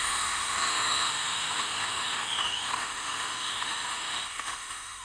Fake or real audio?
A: fake